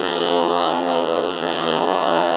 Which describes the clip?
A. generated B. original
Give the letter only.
A